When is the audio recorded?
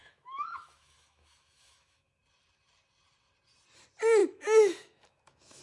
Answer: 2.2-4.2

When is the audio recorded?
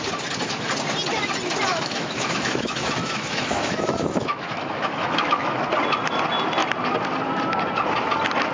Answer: 0.0-1.7; 5.7-8.5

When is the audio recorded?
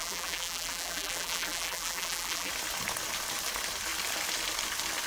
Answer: 2.5-5.1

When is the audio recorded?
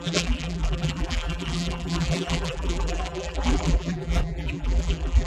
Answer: none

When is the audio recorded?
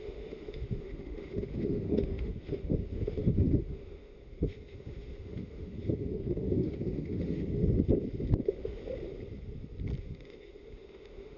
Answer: 7.6-8.4; 8.8-10.0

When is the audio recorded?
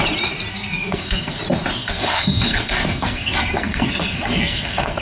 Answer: 0.0-0.5; 1.4-1.8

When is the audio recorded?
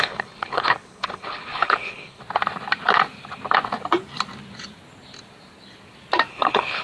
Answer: 2.2-6.3